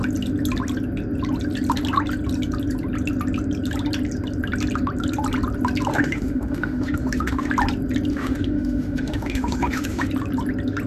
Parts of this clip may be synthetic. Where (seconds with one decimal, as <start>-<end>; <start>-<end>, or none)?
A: 5.9-7.5; 8.1-10.1